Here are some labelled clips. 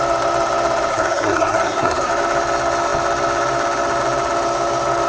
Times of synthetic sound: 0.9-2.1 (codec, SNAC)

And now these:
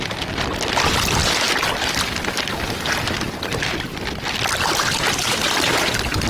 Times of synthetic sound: none

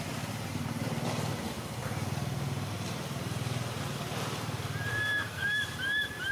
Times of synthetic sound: 4.9-5.6 (codec, SNAC)

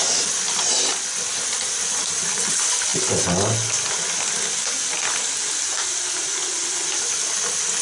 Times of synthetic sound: none

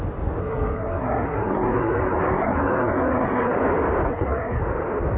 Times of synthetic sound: 0.4-3.5 (codec, SNAC); 4.1-4.6

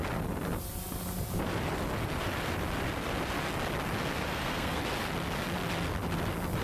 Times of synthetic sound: 4.3-4.8 (codec, SNAC)

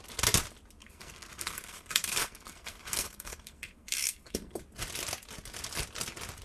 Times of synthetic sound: 0.8-4.6 (codec, SNAC)

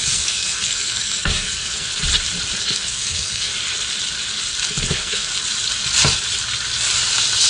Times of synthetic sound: 0.0-1.9 (codec, SNAC); 2.6-3.5; 4.7-5.3